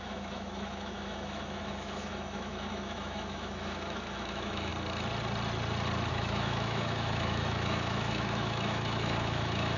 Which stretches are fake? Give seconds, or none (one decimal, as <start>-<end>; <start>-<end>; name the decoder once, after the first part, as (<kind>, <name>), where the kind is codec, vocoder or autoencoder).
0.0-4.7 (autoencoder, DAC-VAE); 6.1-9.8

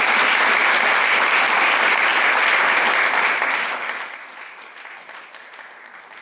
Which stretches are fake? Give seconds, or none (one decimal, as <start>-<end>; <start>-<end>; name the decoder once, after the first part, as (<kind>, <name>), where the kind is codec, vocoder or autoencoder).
none

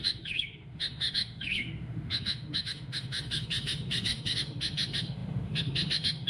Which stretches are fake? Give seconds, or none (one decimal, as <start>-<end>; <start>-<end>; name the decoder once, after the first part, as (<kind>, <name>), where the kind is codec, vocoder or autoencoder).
0.0-6.3 (autoencoder, DAC-VAE)